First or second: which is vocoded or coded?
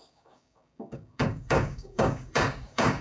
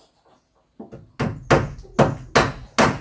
first